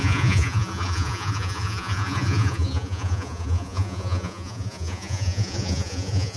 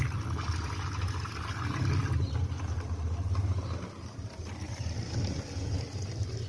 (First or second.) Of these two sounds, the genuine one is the second